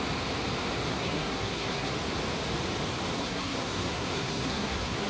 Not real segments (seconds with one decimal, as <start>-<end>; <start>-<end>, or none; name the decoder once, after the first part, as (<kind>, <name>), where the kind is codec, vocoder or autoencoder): 0.9-1.9 (codec, SNAC); 3.2-5.1